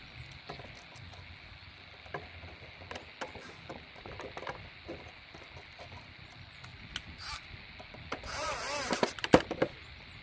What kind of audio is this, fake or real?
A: real